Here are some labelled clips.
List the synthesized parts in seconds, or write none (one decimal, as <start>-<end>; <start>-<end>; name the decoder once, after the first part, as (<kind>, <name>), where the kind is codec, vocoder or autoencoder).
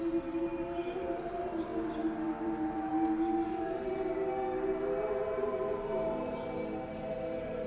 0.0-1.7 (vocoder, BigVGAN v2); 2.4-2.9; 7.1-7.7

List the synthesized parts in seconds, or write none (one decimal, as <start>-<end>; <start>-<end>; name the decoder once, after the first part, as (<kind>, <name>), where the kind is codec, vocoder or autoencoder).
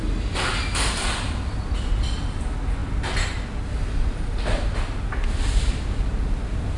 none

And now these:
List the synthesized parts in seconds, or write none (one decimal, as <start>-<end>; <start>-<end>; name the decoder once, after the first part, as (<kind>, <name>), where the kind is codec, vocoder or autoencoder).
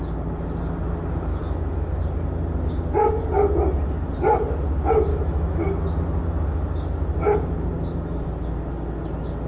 1.3-2.0 (autoencoder, DAC-VAE); 5.1-5.6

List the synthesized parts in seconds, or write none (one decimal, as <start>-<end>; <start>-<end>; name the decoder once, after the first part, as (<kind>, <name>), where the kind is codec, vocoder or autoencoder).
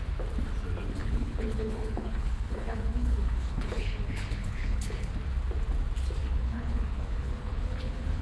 1.0-5.1 (codec, HILCodec); 6.2-8.2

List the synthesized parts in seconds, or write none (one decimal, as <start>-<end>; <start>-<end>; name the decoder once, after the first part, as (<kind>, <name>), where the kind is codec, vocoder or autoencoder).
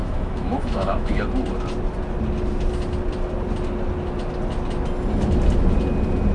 0.0-1.2 (autoencoder, DAC-VAE)